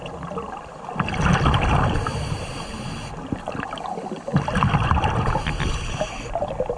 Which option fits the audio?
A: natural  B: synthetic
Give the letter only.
A